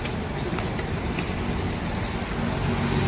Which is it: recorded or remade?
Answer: recorded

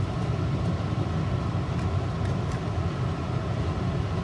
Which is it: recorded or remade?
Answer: remade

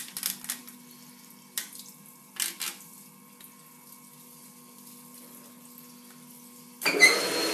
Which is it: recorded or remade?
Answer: recorded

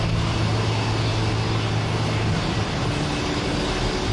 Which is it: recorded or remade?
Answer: recorded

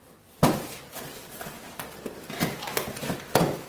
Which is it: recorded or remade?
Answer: remade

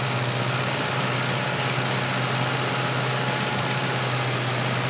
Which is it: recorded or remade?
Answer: recorded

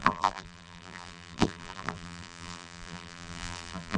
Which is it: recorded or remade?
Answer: remade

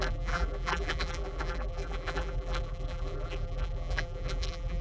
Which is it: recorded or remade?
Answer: remade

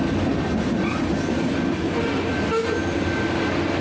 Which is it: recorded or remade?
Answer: recorded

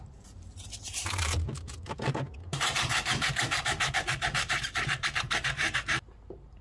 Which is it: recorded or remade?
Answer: remade